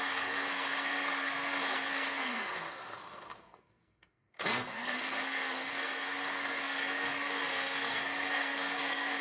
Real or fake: fake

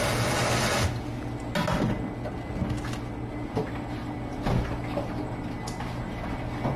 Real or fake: real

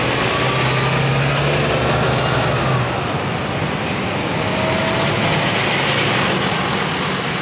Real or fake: real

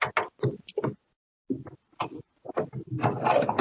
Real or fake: real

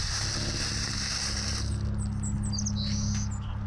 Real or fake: real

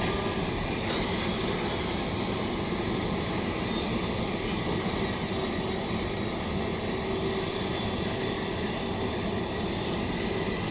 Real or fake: real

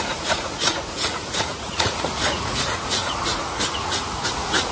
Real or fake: fake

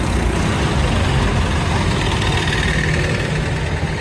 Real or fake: real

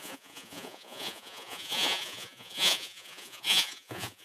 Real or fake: fake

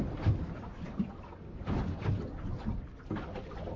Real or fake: real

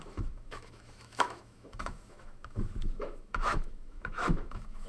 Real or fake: fake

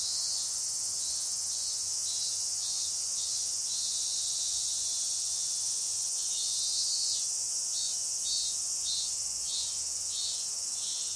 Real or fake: fake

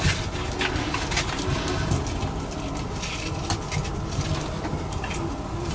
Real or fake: real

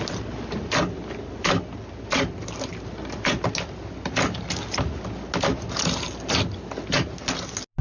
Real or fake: real